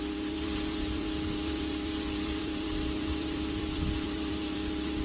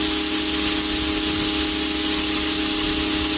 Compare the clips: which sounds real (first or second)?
second